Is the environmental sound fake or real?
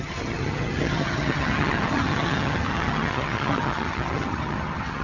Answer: fake